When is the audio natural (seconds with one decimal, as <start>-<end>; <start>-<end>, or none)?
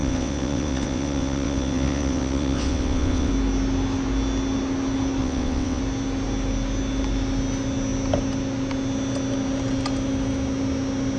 3.3-5.2; 5.8-11.2